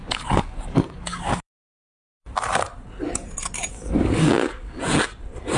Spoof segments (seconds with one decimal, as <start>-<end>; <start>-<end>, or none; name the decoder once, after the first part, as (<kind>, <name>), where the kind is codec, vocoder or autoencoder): 0.0-2.2 (codec, DAC); 3.7-4.8